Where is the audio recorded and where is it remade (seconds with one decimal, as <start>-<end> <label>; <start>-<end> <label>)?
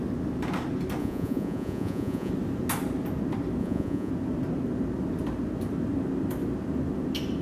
0.0-1.0 recorded; 1.0-2.3 remade; 2.3-3.6 recorded; 3.6-4.1 remade; 4.1-7.4 recorded